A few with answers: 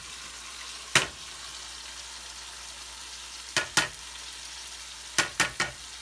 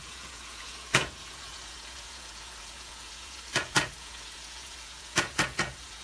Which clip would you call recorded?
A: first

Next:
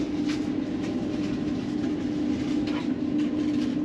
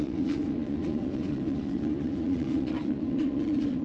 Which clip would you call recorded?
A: first